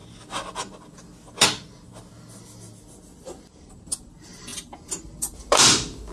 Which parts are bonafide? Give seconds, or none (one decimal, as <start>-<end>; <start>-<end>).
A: 0.0-3.7; 4.5-5.4